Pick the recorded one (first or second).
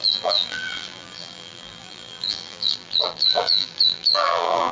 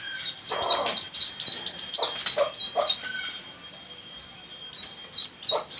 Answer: second